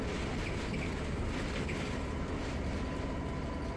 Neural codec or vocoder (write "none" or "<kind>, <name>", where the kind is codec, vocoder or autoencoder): none